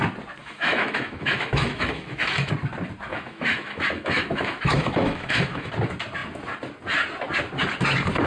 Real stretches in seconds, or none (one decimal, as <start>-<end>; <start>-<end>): 0.0-0.4; 2.5-3.1; 5.7-8.3